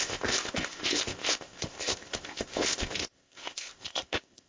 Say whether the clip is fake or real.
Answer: fake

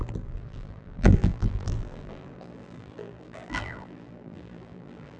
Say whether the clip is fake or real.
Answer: fake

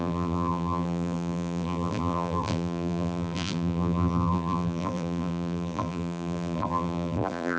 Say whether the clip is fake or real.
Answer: fake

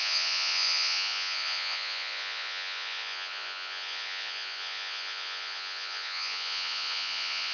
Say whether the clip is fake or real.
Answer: fake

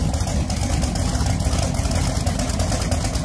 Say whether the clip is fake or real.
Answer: real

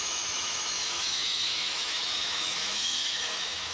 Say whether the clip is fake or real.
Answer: fake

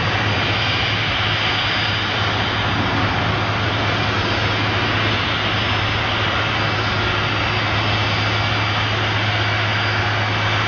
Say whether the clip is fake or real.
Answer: real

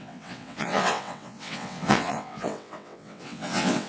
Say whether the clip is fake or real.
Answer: fake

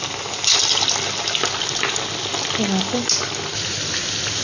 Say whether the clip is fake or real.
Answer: real